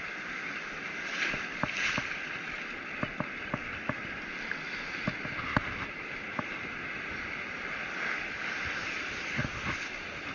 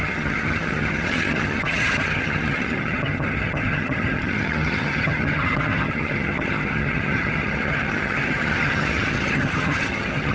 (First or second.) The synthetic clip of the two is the second